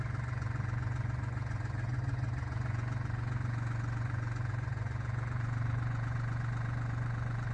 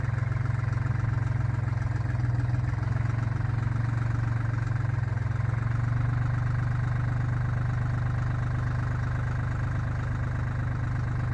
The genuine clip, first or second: second